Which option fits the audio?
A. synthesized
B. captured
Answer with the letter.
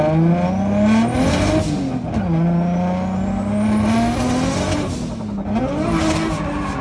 B